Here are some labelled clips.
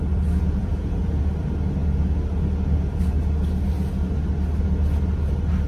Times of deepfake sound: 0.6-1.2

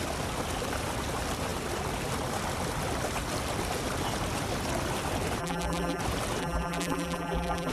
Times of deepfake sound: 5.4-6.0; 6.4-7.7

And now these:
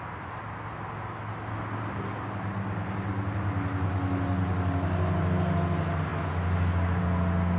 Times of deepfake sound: none

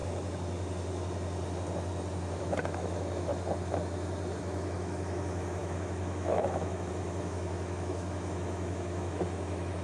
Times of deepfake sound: 2.4-3.3; 4.4-9.8